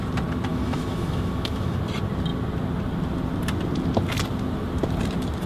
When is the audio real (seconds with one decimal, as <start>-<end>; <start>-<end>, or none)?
0.0-0.5; 1.8-5.5